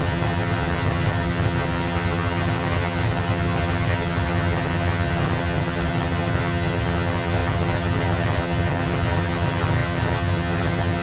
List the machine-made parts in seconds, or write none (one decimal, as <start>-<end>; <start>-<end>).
0.0-11.0